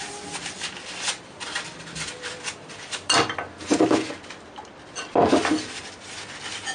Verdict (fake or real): real